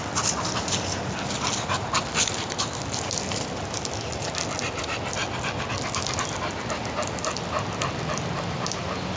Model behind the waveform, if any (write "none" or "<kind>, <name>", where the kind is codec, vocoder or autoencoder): none